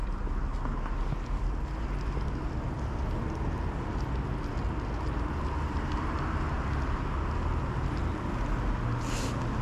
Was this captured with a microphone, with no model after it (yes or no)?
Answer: yes